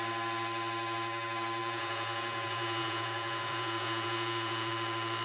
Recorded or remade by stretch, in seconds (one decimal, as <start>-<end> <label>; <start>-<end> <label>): 0.0-1.6 recorded; 1.6-4.7 remade; 4.7-5.2 recorded